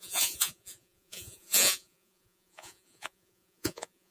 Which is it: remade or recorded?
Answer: remade